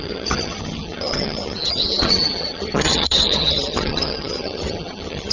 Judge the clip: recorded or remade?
remade